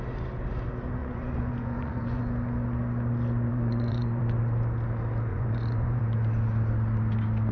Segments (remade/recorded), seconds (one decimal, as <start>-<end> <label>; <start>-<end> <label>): 0.0-1.0 recorded; 1.0-2.2 remade; 2.2-3.5 recorded; 3.5-4.2 remade; 4.2-5.3 recorded; 5.3-6.0 remade; 6.0-7.5 recorded

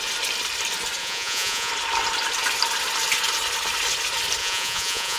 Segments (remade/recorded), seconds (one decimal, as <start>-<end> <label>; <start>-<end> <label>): 0.0-1.0 recorded; 1.0-1.7 remade; 1.7-4.4 recorded; 4.4-5.2 remade

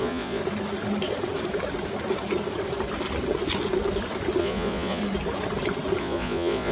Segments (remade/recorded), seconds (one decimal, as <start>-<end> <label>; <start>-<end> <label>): 0.0-0.4 remade; 0.4-4.4 recorded; 4.4-5.0 remade; 5.0-6.0 recorded; 6.0-6.7 remade

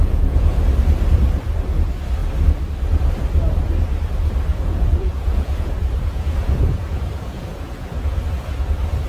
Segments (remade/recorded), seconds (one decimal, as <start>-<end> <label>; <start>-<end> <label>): 0.0-0.7 remade; 0.7-4.5 recorded; 4.5-8.2 remade; 8.2-9.1 recorded

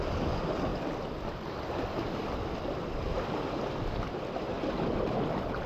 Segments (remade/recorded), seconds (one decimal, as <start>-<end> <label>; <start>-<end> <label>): 0.0-5.7 recorded

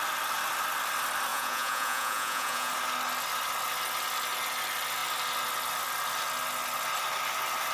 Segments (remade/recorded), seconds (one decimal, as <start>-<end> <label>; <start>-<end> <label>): 0.0-1.3 recorded; 1.3-2.7 remade; 2.7-7.7 recorded

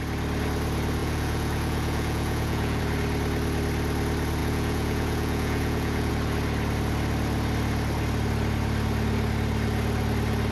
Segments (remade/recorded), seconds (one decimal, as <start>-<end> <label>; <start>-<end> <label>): 0.0-1.0 recorded; 1.0-2.8 remade; 2.8-4.4 recorded; 4.4-6.1 remade; 6.1-10.5 recorded

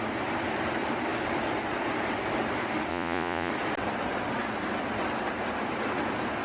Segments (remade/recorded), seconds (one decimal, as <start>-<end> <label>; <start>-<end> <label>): 0.0-2.9 recorded; 2.9-3.5 remade; 3.5-6.4 recorded